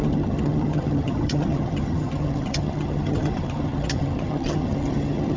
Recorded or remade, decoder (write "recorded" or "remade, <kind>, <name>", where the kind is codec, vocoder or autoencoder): remade, vocoder, HiFi-GAN